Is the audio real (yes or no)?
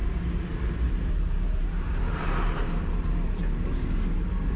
no